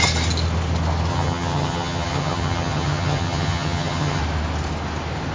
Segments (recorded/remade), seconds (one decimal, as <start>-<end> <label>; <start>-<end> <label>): 0.0-1.1 recorded; 1.1-4.2 remade; 4.2-5.3 recorded